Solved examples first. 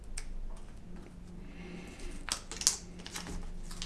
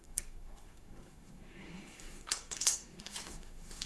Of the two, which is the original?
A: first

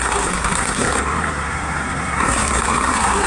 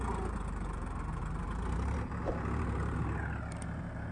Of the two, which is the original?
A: second